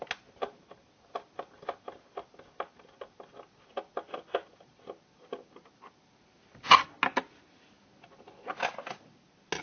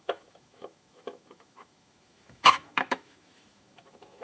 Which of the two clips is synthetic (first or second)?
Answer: second